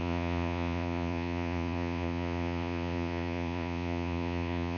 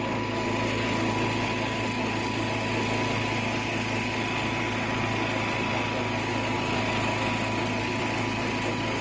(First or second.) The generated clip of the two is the first